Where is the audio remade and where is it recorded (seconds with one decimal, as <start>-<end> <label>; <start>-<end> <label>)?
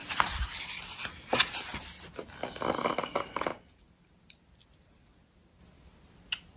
0.0-6.6 recorded